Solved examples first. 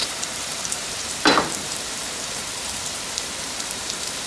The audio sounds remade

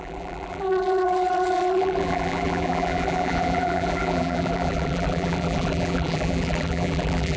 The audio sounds remade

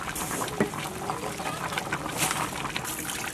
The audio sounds recorded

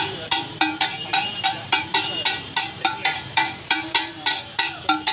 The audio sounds remade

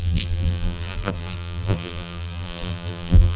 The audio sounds remade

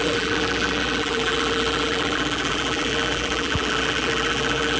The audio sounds remade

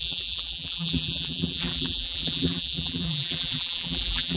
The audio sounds remade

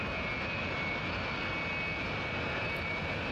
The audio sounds recorded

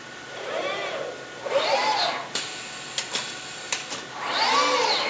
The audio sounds recorded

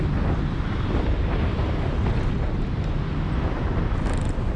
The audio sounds recorded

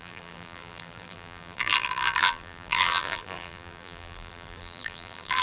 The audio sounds remade